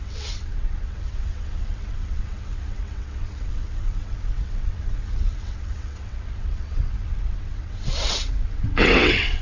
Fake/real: fake